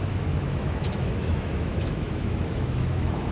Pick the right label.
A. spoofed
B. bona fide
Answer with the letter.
A